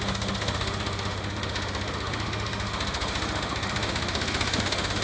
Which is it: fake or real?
fake